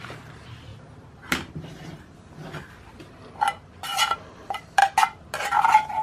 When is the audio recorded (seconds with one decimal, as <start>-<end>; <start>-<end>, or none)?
0.7-4.3; 4.8-5.4